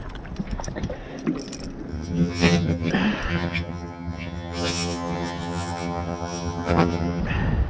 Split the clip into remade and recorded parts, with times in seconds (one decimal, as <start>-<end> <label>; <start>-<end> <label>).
0.0-1.9 recorded; 1.9-2.9 remade; 2.9-3.3 recorded; 3.3-7.2 remade; 7.2-7.7 recorded